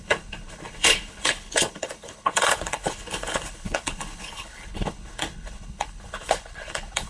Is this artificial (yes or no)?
yes